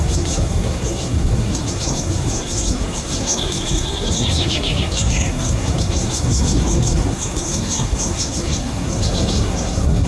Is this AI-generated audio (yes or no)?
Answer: yes